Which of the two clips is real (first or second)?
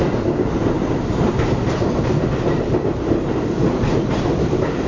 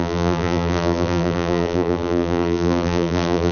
first